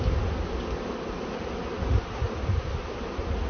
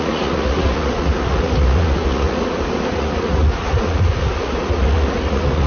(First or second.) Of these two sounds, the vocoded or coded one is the second